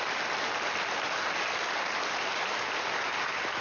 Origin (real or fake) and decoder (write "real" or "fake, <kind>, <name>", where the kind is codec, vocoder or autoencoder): real